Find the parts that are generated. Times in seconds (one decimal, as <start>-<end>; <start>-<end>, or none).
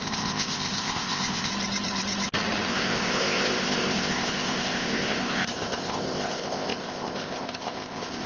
0.0-1.5; 2.7-8.3